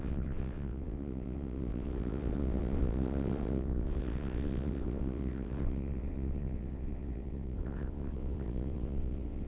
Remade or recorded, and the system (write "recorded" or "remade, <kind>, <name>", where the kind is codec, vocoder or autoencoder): remade, vocoder, WaveNeXt